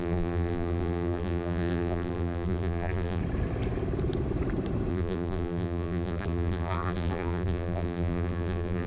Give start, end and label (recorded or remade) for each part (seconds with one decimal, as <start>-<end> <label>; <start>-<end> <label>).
0.0-3.2 remade; 3.2-4.9 recorded; 4.9-8.9 remade